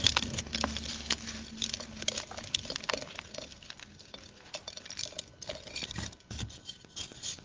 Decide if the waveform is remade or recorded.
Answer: recorded